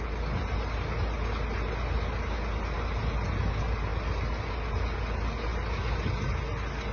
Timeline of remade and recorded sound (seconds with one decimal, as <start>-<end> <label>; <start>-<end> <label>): 0.0-6.9 recorded